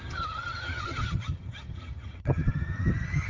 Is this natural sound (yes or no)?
no